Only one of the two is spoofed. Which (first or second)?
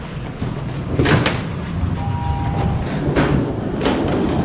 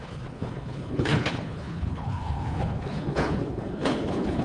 second